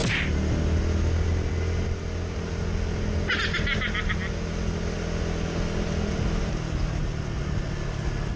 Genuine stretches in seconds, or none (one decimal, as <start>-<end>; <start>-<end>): 0.0-8.4